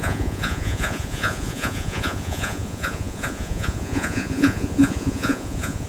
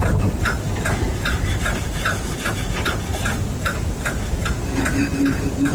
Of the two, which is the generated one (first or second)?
first